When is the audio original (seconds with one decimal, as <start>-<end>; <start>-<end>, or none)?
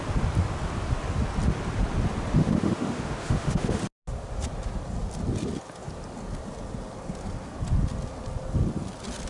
0.0-2.4; 3.8-9.3